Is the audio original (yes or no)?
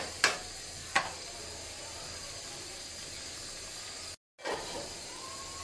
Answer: yes